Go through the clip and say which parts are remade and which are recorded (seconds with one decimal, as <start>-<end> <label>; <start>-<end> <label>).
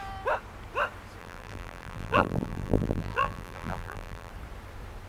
0.0-1.2 recorded; 1.2-4.3 remade; 4.3-5.1 recorded